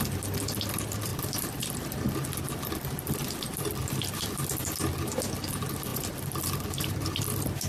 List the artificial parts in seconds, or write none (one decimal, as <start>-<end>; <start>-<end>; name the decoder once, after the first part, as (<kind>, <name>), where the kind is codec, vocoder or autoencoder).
1.1-2.0 (vocoder, BigVGAN v2); 3.8-4.7; 5.9-7.2

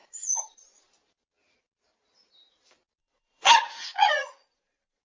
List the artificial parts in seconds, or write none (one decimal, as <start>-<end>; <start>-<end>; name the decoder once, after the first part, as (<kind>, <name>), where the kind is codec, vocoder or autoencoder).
0.0-0.9 (vocoder, Vocos); 3.0-5.0

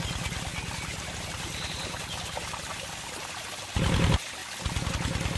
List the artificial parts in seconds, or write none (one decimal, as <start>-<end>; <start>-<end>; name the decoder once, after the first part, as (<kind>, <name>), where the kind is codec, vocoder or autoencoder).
none

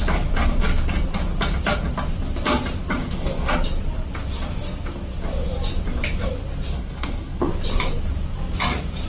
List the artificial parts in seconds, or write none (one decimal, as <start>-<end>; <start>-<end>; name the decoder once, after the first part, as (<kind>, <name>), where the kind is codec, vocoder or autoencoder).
3.0-3.5 (codec, SNAC); 6.7-7.5

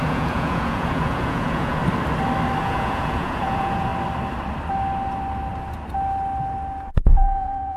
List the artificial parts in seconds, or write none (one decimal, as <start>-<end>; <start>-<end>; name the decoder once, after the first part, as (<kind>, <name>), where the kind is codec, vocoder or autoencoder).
0.0-1.8 (vocoder, Vocos); 2.6-3.9; 6.9-7.8

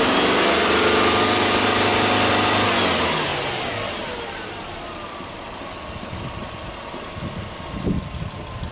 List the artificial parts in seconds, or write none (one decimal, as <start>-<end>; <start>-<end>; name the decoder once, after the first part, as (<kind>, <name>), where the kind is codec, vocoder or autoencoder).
none

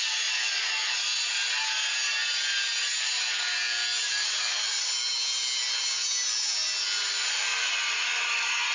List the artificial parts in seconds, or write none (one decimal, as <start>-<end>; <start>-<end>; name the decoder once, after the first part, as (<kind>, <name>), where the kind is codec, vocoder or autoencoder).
none

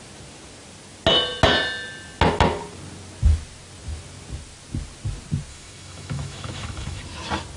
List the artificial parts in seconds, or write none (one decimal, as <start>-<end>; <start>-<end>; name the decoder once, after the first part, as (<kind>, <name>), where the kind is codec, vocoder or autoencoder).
5.5-7.0 (autoencoder, DAC-VAE)